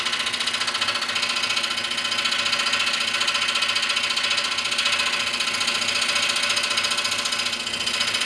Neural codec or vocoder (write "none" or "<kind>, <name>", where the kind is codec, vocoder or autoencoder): none